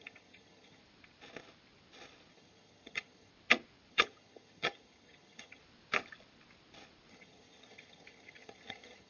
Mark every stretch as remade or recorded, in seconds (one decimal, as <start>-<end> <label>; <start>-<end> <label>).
0.0-0.8 remade; 0.8-2.3 recorded; 2.3-3.3 remade; 3.3-3.9 recorded; 3.9-5.6 remade; 5.6-7.1 recorded; 7.1-9.1 remade